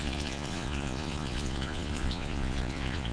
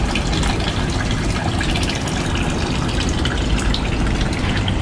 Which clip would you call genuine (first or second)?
second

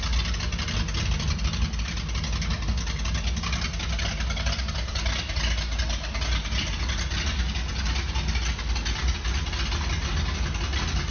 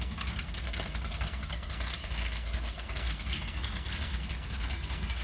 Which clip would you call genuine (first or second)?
first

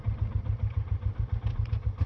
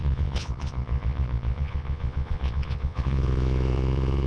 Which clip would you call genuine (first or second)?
first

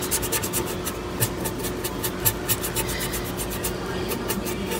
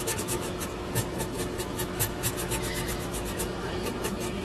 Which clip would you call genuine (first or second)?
first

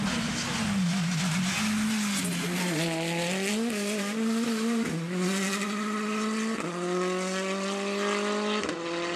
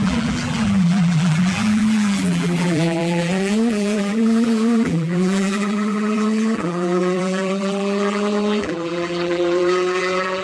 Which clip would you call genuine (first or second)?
first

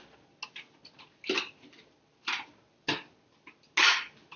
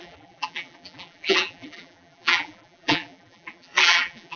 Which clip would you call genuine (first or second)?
first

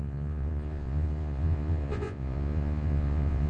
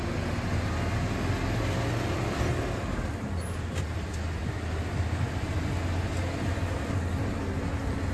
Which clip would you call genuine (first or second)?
second